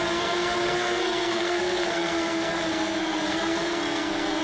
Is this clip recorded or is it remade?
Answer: remade